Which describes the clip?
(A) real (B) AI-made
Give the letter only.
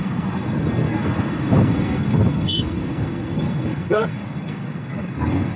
B